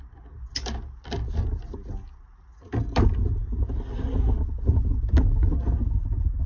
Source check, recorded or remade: recorded